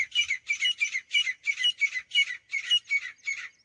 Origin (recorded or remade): recorded